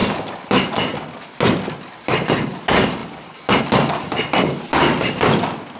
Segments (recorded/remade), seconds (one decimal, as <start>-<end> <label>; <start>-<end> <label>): 0.0-5.8 recorded